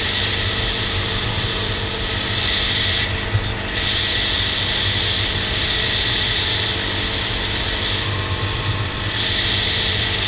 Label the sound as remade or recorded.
recorded